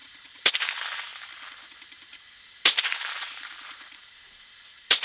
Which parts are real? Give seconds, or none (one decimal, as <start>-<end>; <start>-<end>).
0.5-1.1; 4.1-5.0